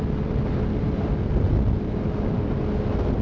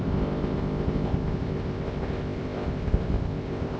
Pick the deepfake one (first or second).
second